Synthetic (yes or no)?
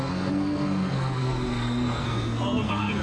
yes